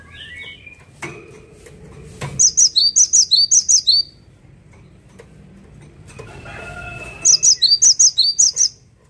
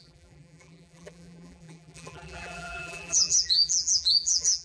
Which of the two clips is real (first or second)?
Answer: first